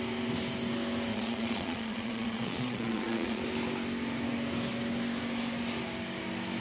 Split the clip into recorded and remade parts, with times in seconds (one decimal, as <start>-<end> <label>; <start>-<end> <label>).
0.0-1.1 recorded; 1.1-3.4 remade; 3.4-6.6 recorded